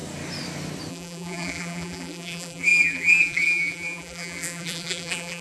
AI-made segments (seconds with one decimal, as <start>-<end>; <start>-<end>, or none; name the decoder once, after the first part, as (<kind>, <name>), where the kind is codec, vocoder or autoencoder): 0.9-5.4 (vocoder, BigVGAN v2)